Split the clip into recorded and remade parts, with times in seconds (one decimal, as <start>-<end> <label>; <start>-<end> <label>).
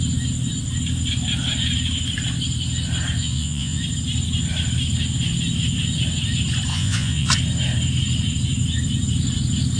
0.0-3.2 recorded; 3.2-3.8 remade; 3.8-6.7 recorded; 6.7-7.3 remade; 7.3-9.8 recorded